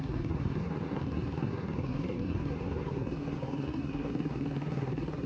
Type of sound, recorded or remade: remade